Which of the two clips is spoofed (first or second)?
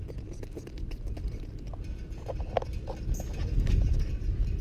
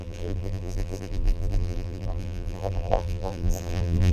second